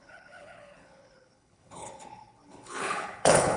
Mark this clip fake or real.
fake